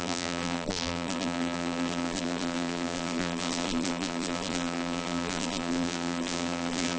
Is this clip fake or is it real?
fake